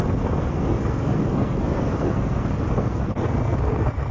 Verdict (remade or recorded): remade